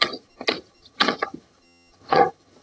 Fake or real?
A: fake